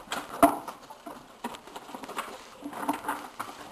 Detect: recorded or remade recorded